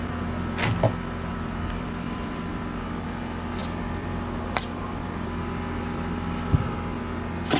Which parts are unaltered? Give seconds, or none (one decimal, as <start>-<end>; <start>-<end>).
0.0-1.3; 2.6-3.6; 5.4-7.6